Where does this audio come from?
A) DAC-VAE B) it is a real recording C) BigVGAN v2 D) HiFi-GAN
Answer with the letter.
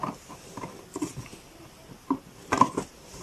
C